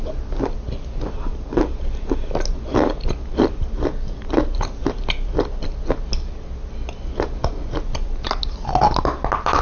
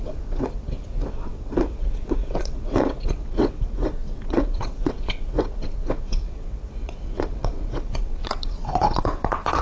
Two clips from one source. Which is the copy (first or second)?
second